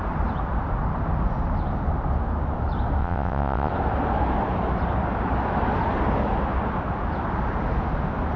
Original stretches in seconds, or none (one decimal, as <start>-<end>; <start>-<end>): 0.0-3.0; 3.7-8.4